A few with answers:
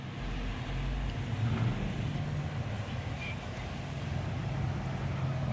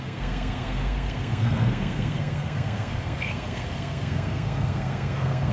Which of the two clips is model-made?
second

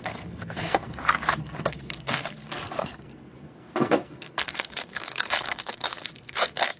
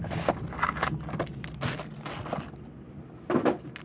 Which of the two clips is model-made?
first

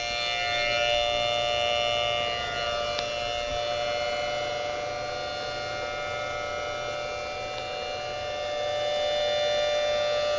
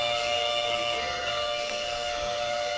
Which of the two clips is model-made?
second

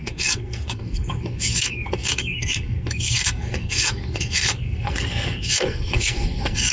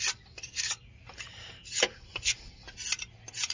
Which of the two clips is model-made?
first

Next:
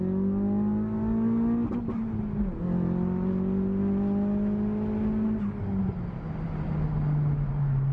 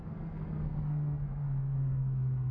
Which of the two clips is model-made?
second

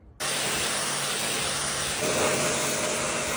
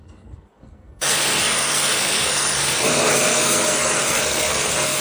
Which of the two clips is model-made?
second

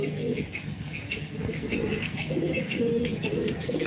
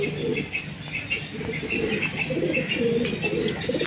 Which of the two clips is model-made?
first